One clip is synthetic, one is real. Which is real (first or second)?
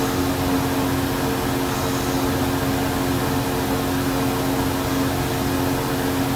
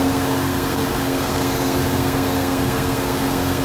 first